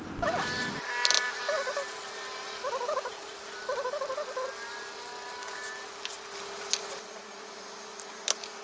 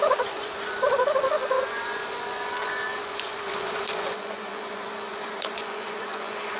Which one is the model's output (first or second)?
second